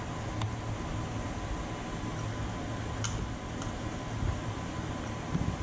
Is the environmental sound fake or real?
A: real